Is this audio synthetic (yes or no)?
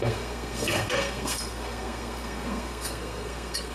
yes